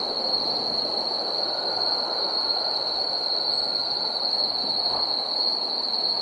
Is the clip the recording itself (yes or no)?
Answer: yes